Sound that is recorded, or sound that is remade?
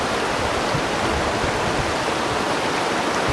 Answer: remade